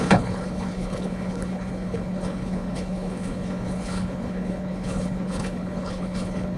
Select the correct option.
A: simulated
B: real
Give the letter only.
A